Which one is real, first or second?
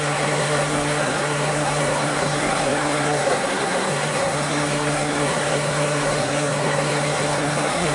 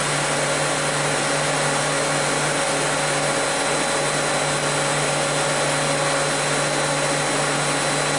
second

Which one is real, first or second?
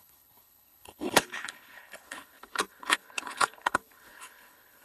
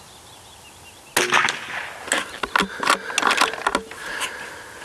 second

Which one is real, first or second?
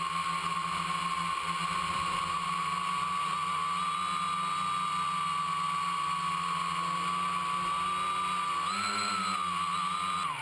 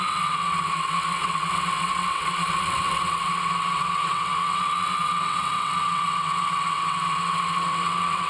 first